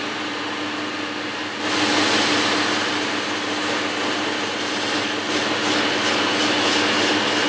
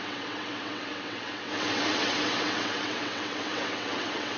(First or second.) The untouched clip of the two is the first